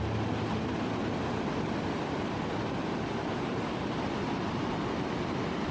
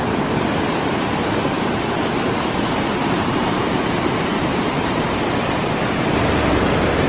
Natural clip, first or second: first